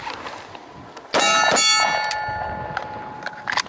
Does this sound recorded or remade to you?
recorded